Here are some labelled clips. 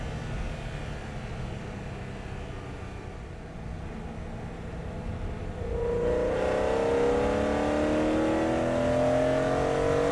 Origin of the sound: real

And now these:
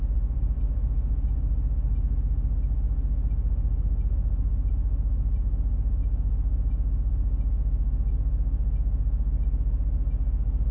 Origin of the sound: real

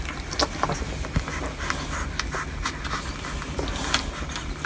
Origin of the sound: real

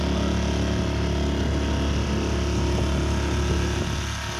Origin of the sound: real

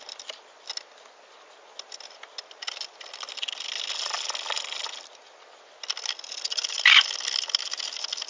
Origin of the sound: real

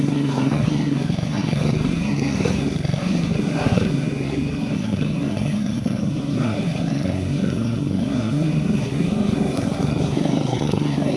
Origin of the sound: fake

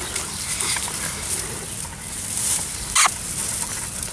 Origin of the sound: real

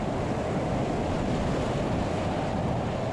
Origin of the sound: real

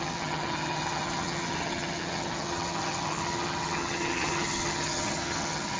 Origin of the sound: fake